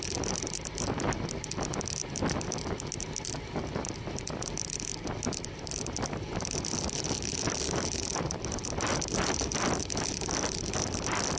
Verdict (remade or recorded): recorded